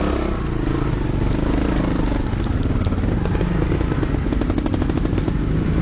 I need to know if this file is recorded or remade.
recorded